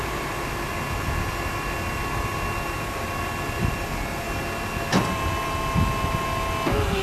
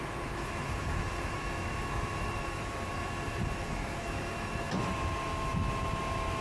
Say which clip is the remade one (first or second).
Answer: second